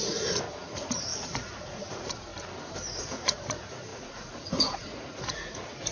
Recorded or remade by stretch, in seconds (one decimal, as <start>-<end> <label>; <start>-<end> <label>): 0.0-2.3 remade; 2.3-3.0 recorded; 3.0-5.9 remade